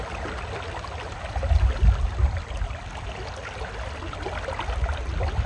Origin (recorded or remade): recorded